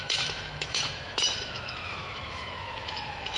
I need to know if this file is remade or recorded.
remade